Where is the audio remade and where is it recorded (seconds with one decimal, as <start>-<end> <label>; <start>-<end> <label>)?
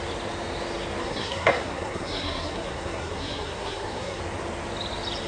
0.0-1.0 recorded; 1.0-4.2 remade; 4.2-5.3 recorded